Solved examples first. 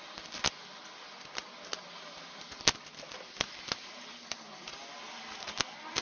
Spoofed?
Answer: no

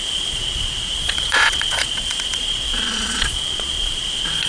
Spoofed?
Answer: yes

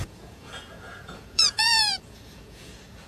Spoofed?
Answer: yes